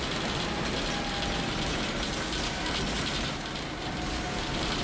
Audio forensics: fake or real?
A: real